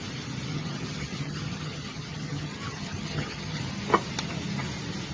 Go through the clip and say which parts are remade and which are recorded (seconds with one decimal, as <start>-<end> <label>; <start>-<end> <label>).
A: 0.0-0.5 recorded; 0.5-3.6 remade; 3.6-5.1 recorded